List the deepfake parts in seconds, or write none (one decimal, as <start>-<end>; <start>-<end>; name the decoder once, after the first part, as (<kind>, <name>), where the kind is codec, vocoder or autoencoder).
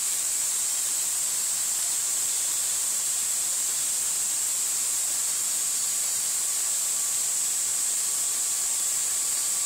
0.0-9.7 (vocoder, BigVGAN v2)